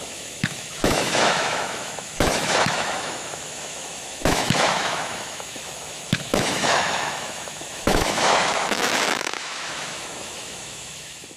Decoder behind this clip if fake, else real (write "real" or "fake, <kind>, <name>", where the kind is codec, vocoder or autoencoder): fake, autoencoder, DAC-VAE